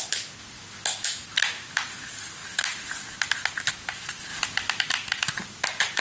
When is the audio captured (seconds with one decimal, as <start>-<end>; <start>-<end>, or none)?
0.0-6.0